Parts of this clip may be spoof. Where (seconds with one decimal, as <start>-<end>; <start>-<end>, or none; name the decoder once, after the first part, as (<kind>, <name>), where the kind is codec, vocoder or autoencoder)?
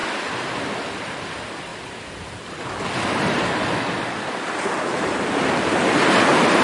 0.0-0.5 (vocoder, BigVGAN v2); 1.7-2.3